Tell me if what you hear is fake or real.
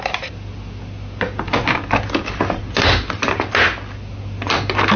real